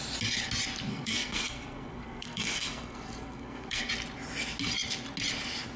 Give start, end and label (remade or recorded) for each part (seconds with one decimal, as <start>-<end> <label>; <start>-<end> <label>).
0.0-0.9 recorded; 0.9-3.9 remade; 3.9-5.8 recorded